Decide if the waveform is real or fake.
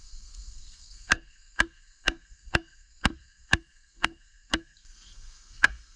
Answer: fake